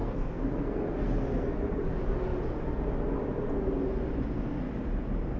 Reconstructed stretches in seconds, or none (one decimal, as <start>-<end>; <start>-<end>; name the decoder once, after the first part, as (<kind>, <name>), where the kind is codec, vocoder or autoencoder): 0.0-1.9 (codec, SNAC)

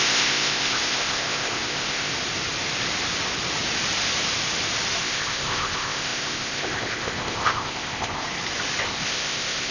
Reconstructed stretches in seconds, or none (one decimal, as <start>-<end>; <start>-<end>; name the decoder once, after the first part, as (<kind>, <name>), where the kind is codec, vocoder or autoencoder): 0.0-2.1 (codec, ZipCodec); 5.0-8.2; 8.8-9.7